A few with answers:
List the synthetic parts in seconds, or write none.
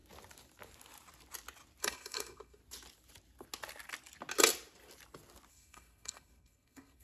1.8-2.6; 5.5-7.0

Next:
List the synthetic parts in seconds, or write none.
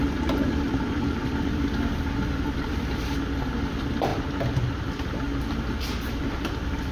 none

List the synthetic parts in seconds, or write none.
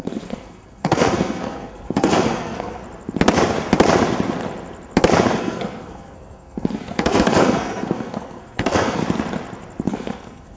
0.0-2.8; 5.4-9.0; 9.9-10.6